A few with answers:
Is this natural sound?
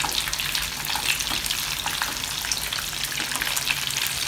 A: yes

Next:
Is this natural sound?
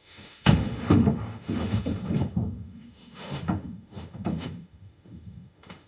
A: no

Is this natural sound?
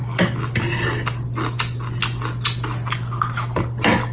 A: yes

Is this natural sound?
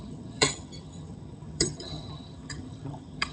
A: no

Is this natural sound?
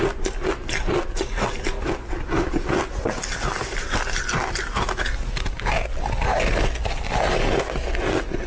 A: yes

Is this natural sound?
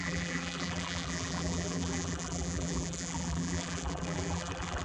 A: no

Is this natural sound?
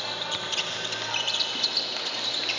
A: yes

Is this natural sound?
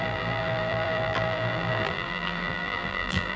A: no